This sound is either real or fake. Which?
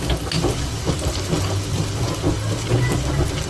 real